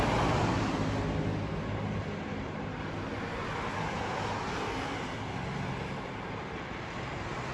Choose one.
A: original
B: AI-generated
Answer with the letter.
A